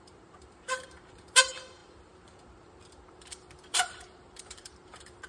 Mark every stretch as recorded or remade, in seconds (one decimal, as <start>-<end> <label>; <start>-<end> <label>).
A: 0.0-5.3 remade